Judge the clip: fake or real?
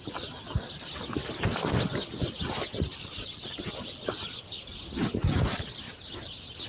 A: real